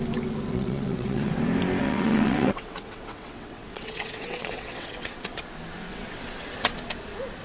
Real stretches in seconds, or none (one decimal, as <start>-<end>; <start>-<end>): 0.0-0.5; 1.3-1.8; 5.4-5.9; 6.7-7.4